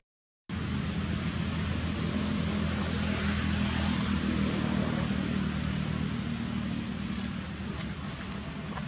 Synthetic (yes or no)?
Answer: no